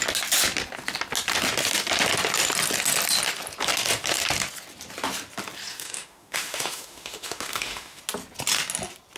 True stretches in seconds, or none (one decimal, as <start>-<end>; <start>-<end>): 0.0-5.7; 8.0-9.2